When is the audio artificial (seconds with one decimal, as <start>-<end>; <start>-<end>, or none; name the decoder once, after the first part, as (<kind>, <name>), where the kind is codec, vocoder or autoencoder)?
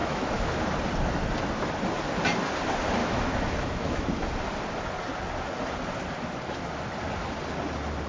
0.0-0.6 (autoencoder, DAC-VAE); 3.0-4.3